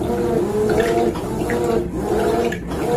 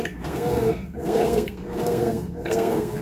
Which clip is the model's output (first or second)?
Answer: second